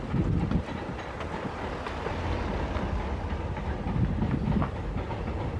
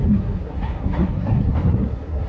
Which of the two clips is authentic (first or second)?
first